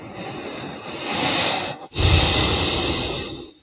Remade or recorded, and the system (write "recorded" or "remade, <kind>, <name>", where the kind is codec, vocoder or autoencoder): recorded